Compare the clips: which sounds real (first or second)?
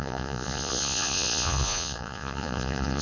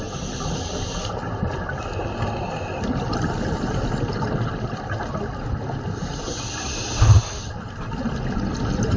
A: second